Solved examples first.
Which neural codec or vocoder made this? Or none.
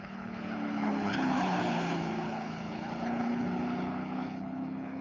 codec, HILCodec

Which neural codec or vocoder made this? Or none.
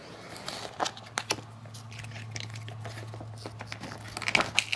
none